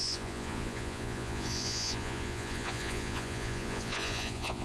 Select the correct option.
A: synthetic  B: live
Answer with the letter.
A